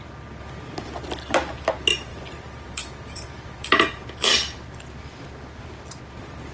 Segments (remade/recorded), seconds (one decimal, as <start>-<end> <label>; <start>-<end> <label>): 0.0-2.1 recorded; 2.1-6.0 remade; 6.0-6.5 recorded